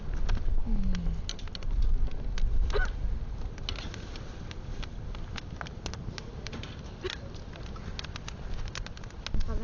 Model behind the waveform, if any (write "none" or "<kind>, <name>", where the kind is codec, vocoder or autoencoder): none